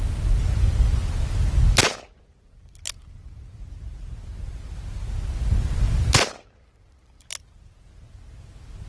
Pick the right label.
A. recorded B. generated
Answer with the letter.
A